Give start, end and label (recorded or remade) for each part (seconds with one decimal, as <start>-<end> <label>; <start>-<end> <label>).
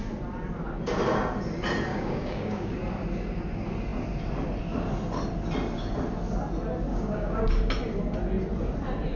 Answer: 0.0-1.9 recorded; 1.9-2.7 remade; 2.7-6.9 recorded; 6.9-7.5 remade; 7.5-9.2 recorded